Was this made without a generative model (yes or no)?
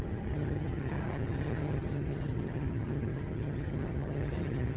no